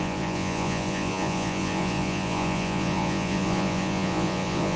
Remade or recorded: remade